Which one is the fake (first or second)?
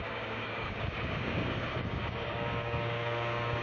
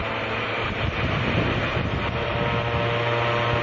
first